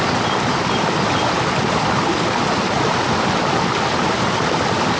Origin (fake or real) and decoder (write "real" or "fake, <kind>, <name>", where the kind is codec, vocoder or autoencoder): real